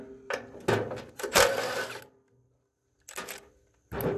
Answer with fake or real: real